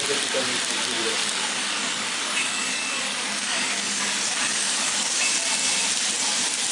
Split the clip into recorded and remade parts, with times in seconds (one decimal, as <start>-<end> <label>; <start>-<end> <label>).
0.0-1.2 recorded; 1.2-5.2 remade; 5.2-6.7 recorded

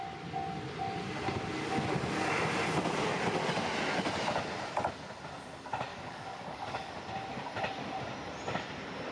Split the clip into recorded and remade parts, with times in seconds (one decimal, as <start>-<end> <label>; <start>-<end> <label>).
0.0-5.9 recorded; 5.9-7.0 remade; 7.0-9.1 recorded

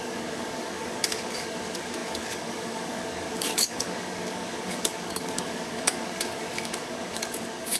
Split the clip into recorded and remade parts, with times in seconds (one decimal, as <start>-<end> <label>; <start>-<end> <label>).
0.0-7.8 remade

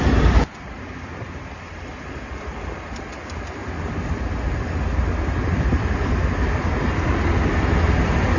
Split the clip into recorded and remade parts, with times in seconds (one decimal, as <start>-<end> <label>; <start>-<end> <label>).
0.0-8.4 recorded

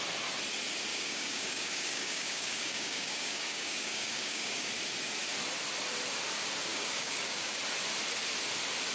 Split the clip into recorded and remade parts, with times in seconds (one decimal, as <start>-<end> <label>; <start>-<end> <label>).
0.0-0.9 recorded; 0.9-4.7 remade; 4.7-6.7 recorded; 6.7-7.6 remade; 7.6-8.9 recorded

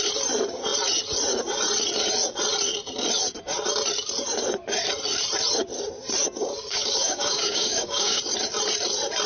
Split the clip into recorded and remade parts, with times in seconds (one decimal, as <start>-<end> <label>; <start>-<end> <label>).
0.0-6.7 recorded; 6.7-8.2 remade; 8.2-9.3 recorded